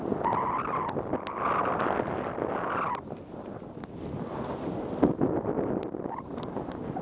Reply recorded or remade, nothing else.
recorded